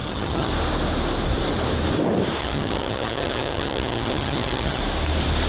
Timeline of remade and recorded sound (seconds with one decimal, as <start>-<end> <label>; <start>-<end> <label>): 0.0-0.5 remade; 0.5-2.4 recorded; 2.4-4.8 remade; 4.8-5.5 recorded